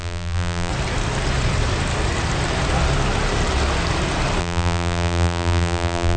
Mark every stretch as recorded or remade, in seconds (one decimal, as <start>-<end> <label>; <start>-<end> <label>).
0.0-0.7 remade; 0.7-4.4 recorded; 4.4-6.2 remade